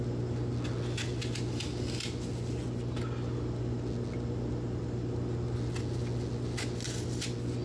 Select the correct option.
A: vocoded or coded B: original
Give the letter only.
B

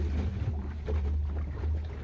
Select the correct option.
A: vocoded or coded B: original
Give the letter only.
B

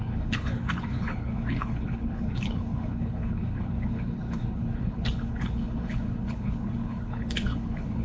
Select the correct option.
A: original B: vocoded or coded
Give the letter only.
B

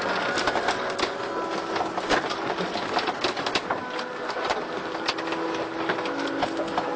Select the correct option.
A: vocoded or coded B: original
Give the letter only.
B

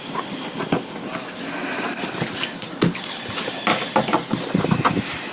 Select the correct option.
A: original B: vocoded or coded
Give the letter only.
A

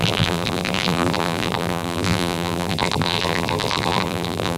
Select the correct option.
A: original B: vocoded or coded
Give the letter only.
B